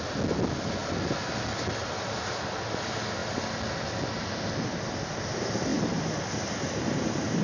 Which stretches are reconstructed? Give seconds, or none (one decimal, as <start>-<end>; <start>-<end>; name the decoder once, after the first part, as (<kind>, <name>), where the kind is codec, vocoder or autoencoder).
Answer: 5.7-7.4 (vocoder, BigVGAN v2)